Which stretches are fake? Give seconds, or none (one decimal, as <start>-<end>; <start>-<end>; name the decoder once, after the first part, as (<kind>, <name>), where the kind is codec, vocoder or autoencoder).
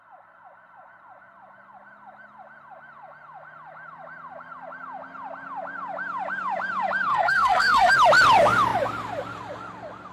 7.1-7.9 (codec, SNAC)